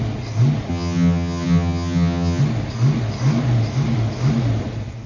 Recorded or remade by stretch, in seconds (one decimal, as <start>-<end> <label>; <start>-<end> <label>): 0.0-0.7 recorded; 0.7-2.4 remade; 2.4-5.1 recorded